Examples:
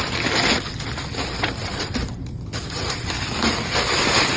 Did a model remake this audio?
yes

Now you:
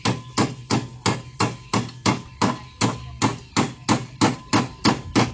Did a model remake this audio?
no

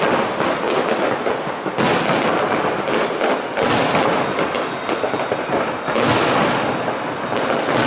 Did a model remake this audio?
no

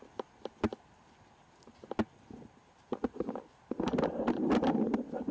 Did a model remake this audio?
no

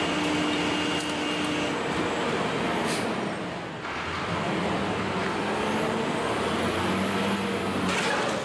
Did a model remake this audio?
no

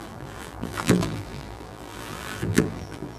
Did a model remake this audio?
yes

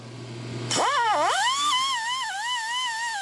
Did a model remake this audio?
no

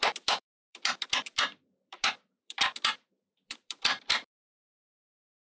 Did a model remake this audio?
yes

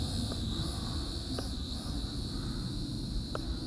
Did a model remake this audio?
no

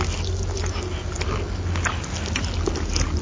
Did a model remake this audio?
no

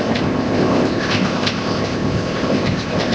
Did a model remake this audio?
yes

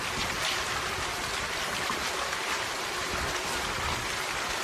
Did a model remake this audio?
no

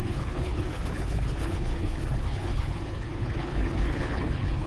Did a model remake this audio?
yes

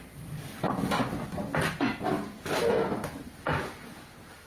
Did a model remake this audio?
no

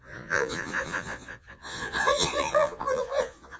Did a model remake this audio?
yes